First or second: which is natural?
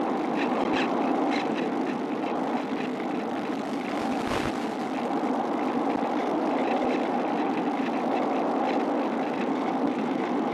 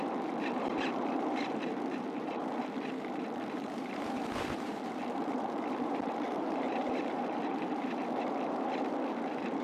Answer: first